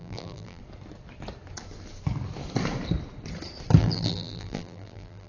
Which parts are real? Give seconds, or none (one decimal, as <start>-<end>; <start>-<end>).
0.6-3.8